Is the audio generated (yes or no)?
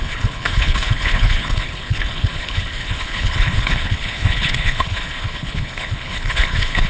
yes